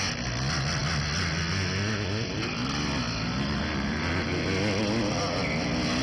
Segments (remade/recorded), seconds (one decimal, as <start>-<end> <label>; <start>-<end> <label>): 0.0-6.0 recorded